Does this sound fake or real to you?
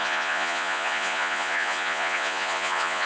fake